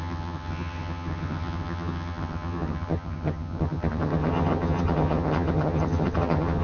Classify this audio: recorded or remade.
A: remade